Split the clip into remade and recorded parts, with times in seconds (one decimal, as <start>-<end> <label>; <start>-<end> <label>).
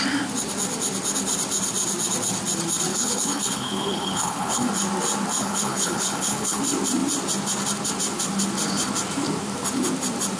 0.0-2.9 recorded; 2.9-4.7 remade; 4.7-5.4 recorded; 5.4-6.6 remade; 6.6-10.4 recorded